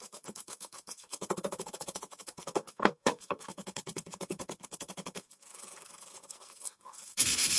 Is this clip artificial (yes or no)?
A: yes